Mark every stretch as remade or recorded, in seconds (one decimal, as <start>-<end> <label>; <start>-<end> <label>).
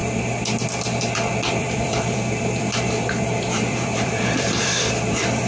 0.0-1.0 recorded; 1.0-5.5 remade